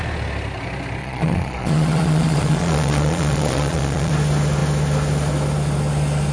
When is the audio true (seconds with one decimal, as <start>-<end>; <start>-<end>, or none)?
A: 0.0-1.0; 4.1-6.3